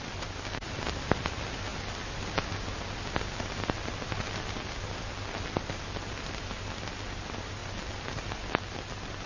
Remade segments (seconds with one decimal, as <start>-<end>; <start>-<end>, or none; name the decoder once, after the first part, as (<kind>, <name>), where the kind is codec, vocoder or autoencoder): none